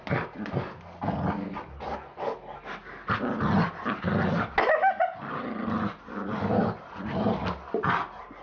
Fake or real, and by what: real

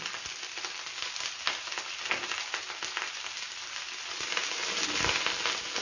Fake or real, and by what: real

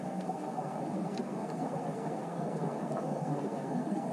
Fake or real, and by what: fake, codec, SNAC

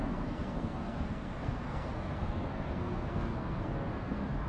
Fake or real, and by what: fake, codec, SNAC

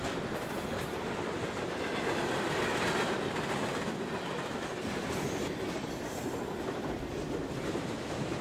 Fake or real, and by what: real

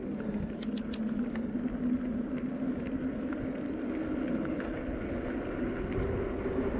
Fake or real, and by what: real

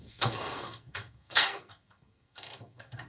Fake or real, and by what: fake, codec, SNAC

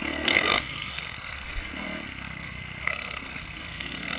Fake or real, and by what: fake, codec, SNAC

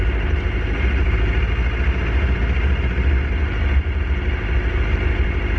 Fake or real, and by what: real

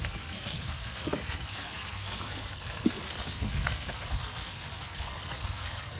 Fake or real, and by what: fake, codec, SNAC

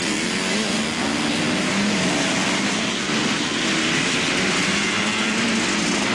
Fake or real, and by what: real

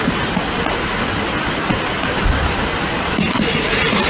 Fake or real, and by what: real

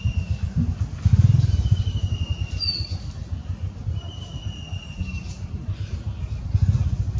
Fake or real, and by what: real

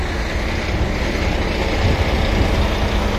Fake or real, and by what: real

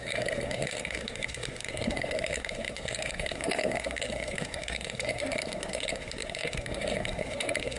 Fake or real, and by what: fake, codec, SNAC